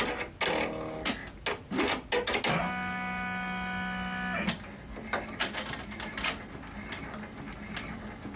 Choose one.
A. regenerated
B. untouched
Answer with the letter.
B